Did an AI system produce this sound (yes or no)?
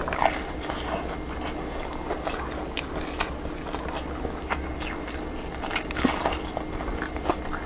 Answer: no